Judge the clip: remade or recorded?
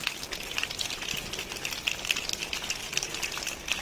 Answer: recorded